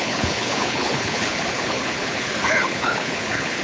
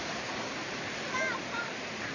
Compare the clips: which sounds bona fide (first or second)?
second